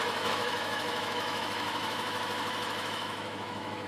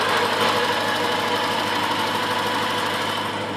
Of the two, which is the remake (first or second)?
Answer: first